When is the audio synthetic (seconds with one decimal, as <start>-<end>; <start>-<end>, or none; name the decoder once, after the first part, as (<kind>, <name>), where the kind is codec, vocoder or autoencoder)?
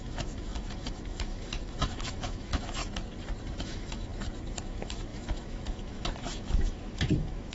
0.0-2.8 (autoencoder, DAC-VAE); 3.6-4.1; 4.6-7.5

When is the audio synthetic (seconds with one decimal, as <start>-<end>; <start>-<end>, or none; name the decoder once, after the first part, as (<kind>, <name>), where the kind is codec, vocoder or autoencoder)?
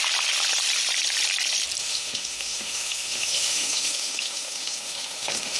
1.8-5.6 (autoencoder, DAC-VAE)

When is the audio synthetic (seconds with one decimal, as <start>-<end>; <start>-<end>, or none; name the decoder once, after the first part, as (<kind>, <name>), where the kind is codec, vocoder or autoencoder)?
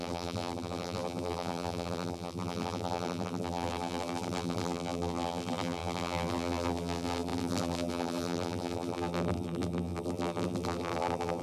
0.0-11.4 (vocoder, BigVGAN v2)